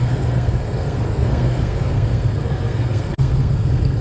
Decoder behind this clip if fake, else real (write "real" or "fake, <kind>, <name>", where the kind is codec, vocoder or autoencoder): fake, codec, SNAC